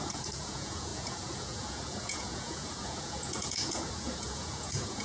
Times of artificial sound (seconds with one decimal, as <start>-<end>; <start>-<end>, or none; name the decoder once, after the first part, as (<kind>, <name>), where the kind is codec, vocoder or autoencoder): 0.0-5.0 (vocoder, Vocos)